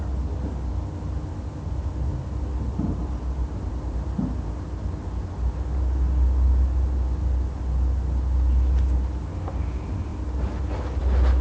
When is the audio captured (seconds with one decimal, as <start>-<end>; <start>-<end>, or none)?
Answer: 0.0-11.4